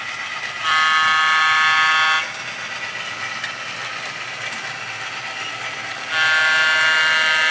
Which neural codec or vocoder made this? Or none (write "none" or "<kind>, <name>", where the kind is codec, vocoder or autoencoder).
none